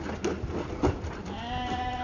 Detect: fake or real real